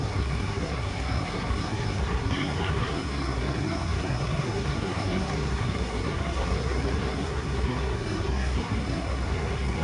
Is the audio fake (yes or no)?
yes